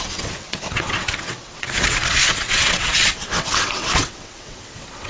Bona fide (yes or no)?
no